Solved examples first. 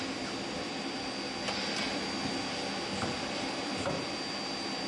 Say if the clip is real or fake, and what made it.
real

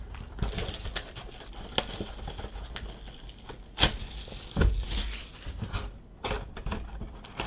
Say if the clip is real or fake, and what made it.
real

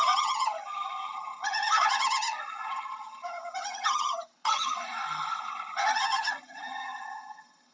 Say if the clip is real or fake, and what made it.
fake, vocoder, HiFi-GAN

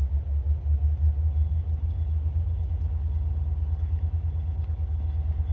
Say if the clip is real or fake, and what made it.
real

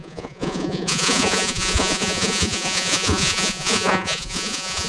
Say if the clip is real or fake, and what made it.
fake, vocoder, Vocos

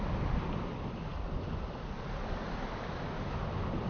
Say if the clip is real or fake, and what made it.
real